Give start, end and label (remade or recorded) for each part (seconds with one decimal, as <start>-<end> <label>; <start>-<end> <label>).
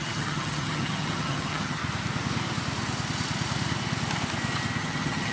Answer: 0.0-1.8 remade; 1.8-4.8 recorded; 4.8-5.3 remade